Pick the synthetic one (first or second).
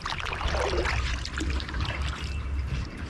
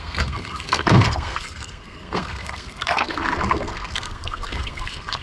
second